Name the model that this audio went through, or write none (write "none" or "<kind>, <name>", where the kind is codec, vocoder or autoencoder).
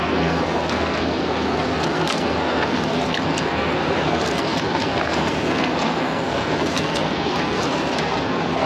codec, SNAC